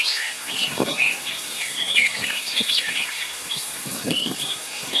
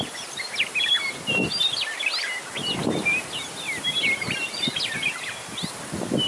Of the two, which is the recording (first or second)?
second